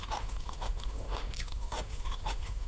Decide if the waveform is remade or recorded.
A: remade